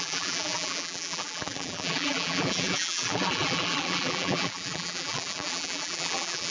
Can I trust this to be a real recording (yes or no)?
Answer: no